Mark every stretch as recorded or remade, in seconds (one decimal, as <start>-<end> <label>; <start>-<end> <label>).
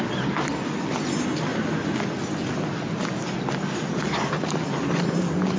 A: 0.0-5.6 recorded